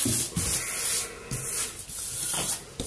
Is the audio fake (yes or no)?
no